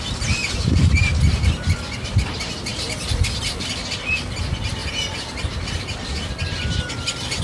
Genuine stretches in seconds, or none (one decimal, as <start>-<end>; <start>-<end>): 0.0-0.4; 1.5-7.4